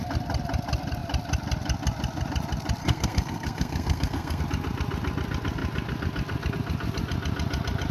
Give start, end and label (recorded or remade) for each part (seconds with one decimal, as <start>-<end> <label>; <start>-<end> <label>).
0.0-2.8 recorded; 2.8-4.4 remade; 4.4-7.9 recorded